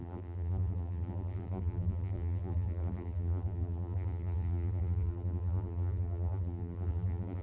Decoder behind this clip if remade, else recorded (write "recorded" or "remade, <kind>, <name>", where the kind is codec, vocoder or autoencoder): remade, vocoder, BigVGAN v2